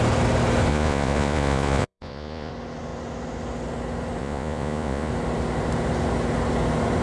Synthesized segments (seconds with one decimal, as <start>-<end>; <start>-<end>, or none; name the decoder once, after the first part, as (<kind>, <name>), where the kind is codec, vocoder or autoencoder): 0.7-2.5 (vocoder, Vocos); 4.2-5.1